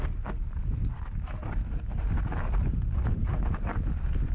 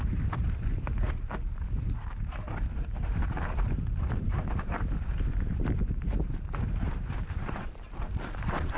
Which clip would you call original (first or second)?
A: first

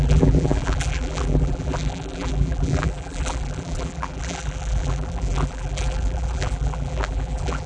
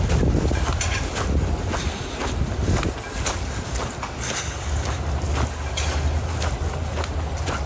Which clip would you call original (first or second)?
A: second